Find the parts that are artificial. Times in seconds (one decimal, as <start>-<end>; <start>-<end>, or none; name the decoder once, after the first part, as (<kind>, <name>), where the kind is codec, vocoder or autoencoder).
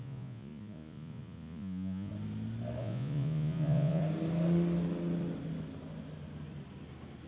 0.0-2.1 (vocoder, Vocos); 2.8-4.0